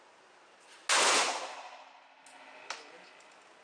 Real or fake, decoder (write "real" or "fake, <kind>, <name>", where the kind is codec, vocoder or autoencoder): real